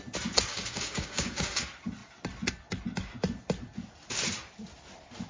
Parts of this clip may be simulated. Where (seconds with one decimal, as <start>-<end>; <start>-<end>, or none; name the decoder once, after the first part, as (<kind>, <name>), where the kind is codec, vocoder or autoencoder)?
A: 0.5-1.6 (codec, DAC)